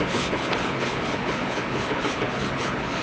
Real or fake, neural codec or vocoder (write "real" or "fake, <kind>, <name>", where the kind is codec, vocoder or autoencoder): fake, codec, HILCodec